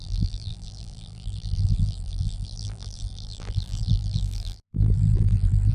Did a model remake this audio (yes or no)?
yes